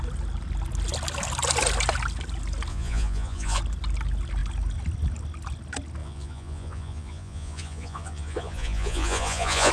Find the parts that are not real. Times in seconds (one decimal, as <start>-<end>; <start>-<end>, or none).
2.7-3.6; 6.0-9.7